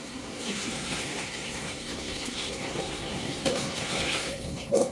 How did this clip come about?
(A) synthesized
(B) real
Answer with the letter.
A